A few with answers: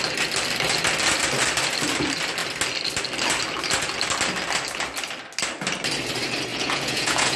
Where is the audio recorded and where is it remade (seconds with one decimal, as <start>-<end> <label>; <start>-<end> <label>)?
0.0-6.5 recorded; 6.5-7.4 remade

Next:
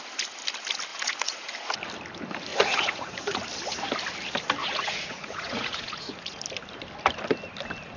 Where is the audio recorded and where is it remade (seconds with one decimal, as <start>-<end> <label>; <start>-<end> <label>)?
0.0-0.9 recorded; 0.9-1.5 remade; 1.5-2.5 recorded; 2.5-3.4 remade; 3.4-4.6 recorded; 4.6-6.4 remade; 6.4-8.0 recorded

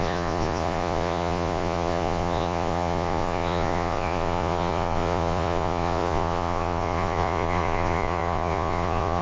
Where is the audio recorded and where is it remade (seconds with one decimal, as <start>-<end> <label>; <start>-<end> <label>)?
0.0-9.2 remade

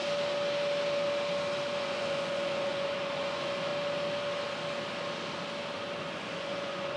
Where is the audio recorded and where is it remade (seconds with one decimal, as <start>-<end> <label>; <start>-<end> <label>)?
0.0-1.8 recorded; 1.8-3.7 remade; 3.7-6.0 recorded; 6.0-7.0 remade

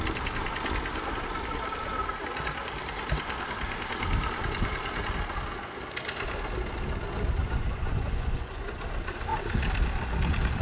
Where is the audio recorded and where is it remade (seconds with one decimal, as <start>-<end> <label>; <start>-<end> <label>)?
0.0-7.4 recorded; 7.4-8.8 remade; 8.8-10.6 recorded